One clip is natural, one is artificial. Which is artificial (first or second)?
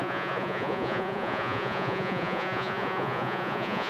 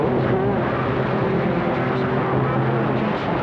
first